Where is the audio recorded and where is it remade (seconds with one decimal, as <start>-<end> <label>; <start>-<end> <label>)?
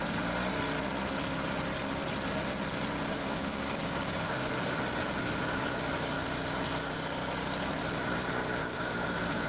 0.0-3.1 recorded; 3.1-4.5 remade; 4.5-8.6 recorded; 8.6-9.5 remade